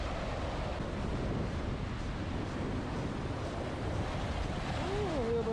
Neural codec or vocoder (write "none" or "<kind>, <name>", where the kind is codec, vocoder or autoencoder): none